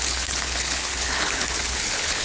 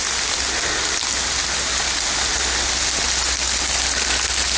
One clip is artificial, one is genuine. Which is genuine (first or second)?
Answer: second